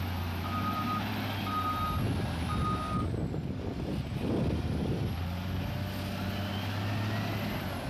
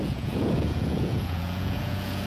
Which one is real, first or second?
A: first